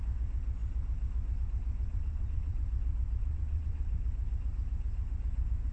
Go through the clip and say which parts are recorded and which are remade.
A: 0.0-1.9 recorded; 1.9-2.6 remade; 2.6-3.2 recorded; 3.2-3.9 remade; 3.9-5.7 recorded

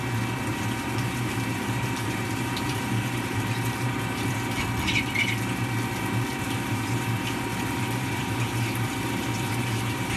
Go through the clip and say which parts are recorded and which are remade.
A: 0.0-0.5 recorded; 0.5-4.3 remade; 4.3-6.3 recorded; 6.3-10.2 remade

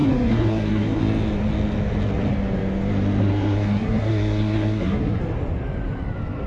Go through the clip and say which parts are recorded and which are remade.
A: 0.0-1.0 remade; 1.0-3.2 recorded; 3.2-5.2 remade; 5.2-6.5 recorded

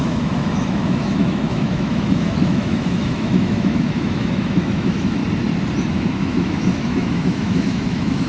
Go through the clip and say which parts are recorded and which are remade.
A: 0.0-5.2 remade; 5.2-5.8 recorded; 5.8-8.3 remade